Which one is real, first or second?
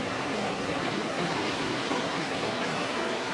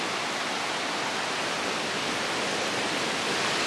second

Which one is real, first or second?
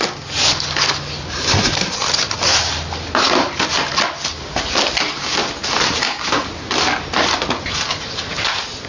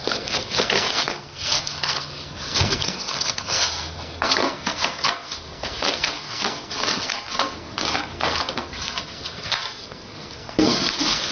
first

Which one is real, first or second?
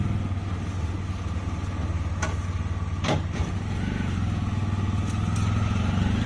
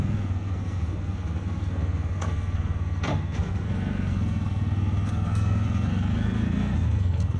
first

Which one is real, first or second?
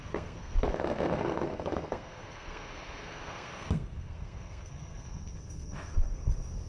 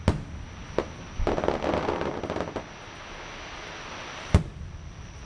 second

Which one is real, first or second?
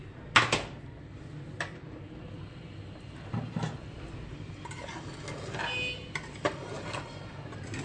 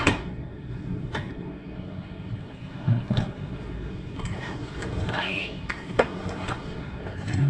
first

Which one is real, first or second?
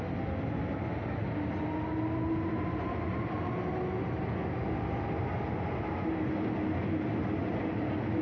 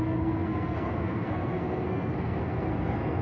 first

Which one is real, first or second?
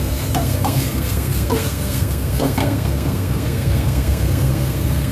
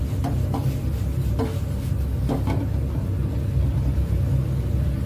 second